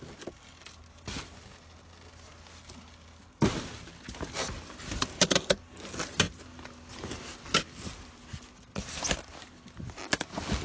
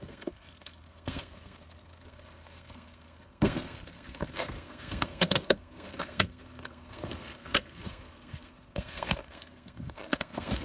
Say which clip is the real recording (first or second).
first